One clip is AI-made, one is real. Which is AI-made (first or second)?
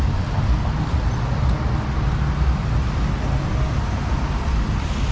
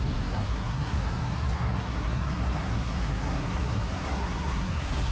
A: second